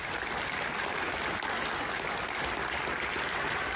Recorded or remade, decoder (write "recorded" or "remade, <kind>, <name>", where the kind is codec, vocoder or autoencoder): recorded